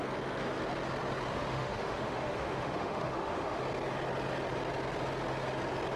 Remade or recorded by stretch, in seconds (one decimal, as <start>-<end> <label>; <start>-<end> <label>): 0.0-1.3 recorded; 1.3-3.6 remade; 3.6-6.0 recorded

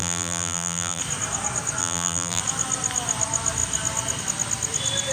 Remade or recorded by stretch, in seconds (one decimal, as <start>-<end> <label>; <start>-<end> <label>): 0.0-1.0 remade; 1.0-1.8 recorded; 1.8-2.4 remade; 2.4-5.1 recorded

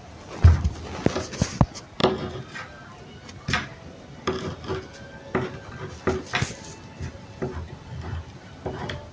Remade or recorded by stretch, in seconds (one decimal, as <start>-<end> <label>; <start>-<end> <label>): 0.0-9.1 recorded

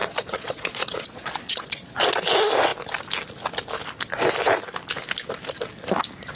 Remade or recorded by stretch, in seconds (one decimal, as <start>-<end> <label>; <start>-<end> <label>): 0.0-2.1 remade; 2.1-6.4 recorded